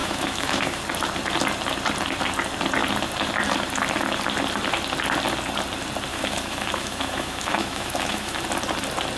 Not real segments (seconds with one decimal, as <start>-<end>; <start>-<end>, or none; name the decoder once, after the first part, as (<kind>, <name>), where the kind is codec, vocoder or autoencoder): 0.0-0.8 (autoencoder, DAC-VAE); 6.1-8.4